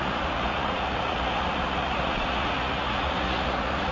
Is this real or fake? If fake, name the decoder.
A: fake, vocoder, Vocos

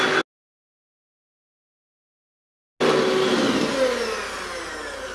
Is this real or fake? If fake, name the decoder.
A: real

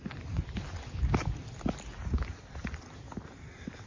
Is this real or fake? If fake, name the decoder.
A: real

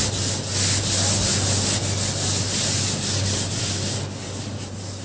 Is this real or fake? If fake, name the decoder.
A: real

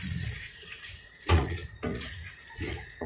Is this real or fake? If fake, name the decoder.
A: fake, vocoder, Vocos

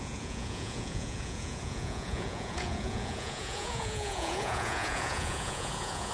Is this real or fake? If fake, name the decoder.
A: fake, vocoder, Vocos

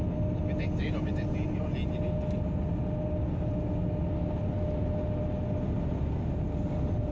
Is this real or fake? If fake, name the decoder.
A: real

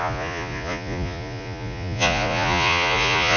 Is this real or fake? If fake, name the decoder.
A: fake, vocoder, Vocos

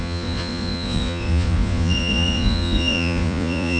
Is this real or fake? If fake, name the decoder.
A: fake, vocoder, Vocos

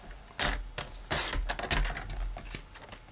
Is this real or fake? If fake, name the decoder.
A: real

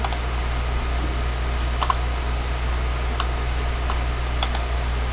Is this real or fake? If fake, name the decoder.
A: real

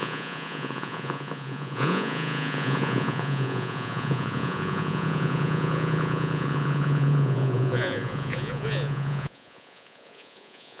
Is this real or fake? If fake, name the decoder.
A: fake, vocoder, Vocos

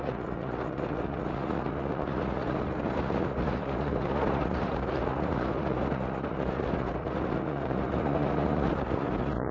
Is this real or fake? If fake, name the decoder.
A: fake, vocoder, Vocos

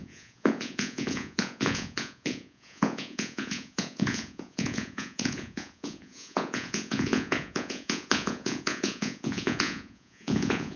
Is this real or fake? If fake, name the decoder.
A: fake, vocoder, Vocos